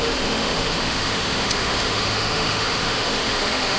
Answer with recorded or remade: remade